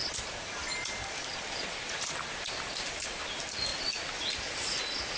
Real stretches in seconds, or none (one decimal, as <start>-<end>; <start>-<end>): 0.0-5.2